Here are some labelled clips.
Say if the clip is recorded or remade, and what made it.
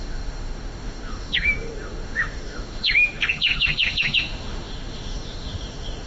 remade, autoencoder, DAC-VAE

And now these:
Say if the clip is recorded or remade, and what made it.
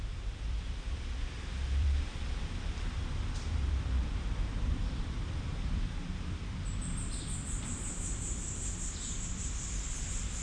remade, vocoder, BigVGAN v2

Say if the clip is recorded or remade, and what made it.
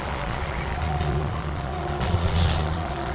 remade, vocoder, Vocos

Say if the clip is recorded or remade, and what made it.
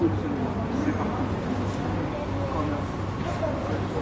recorded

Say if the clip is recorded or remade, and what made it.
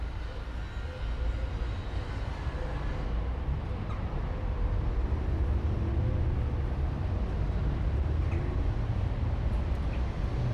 recorded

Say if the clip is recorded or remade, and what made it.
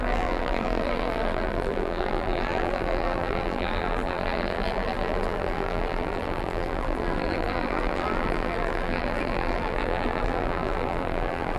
remade, vocoder, BigVGAN v2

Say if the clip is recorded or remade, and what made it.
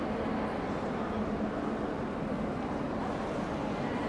recorded